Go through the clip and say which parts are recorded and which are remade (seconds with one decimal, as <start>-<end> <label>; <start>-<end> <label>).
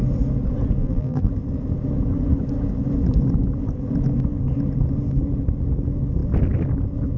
0.0-0.8 recorded; 0.8-1.3 remade; 1.3-7.2 recorded